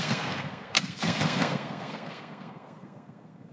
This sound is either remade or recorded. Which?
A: remade